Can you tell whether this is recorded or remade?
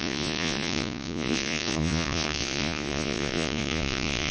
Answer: remade